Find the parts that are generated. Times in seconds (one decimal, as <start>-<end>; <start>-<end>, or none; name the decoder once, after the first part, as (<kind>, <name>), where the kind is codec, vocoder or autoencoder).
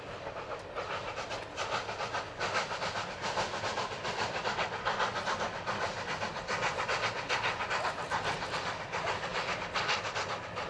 none